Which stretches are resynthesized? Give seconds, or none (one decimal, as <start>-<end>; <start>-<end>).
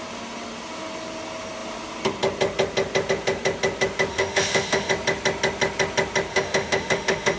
4.1-4.9; 6.3-7.4